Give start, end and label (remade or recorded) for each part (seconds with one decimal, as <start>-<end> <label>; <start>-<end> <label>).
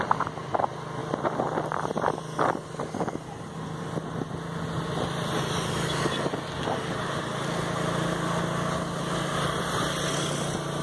0.0-10.8 recorded